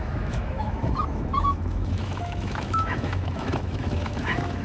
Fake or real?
fake